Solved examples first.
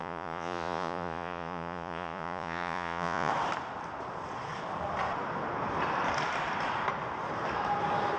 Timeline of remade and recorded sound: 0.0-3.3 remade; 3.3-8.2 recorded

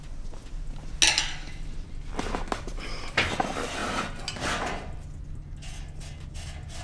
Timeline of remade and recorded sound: 0.0-6.8 recorded

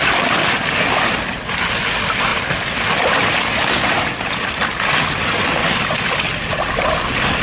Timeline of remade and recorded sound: 0.0-7.4 recorded

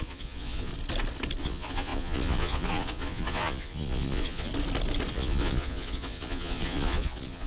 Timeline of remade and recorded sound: 0.0-0.7 remade; 0.7-1.4 recorded; 1.4-4.5 remade; 4.5-5.1 recorded; 5.1-7.5 remade

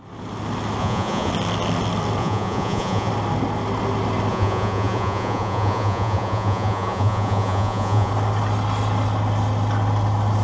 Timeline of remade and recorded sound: 0.0-0.8 recorded; 0.8-1.3 remade; 1.3-2.2 recorded; 2.2-3.1 remade; 3.1-4.3 recorded; 4.3-8.1 remade; 8.1-10.4 recorded

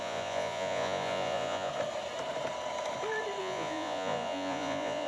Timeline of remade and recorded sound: 0.0-1.7 remade; 1.7-3.4 recorded; 3.4-5.1 remade